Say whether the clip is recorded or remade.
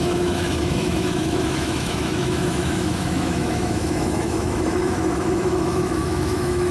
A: remade